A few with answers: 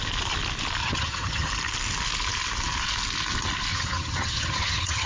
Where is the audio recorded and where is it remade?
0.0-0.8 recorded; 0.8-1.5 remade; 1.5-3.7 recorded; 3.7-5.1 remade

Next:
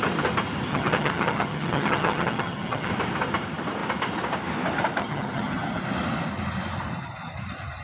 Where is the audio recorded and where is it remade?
0.0-0.7 recorded; 0.7-2.9 remade; 2.9-5.0 recorded; 5.0-5.8 remade; 5.8-7.8 recorded

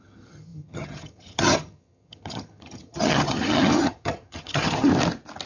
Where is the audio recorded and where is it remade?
0.0-4.9 remade; 4.9-5.5 recorded